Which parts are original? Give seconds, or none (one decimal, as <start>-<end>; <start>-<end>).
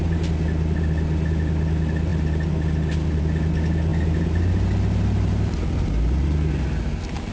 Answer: 0.0-3.9; 6.5-7.3